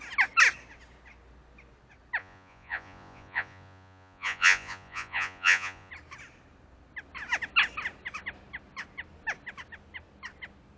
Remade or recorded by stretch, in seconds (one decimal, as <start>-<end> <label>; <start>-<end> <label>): 0.0-2.2 recorded; 2.2-5.9 remade; 5.9-10.8 recorded